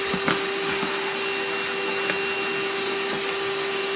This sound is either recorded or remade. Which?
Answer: recorded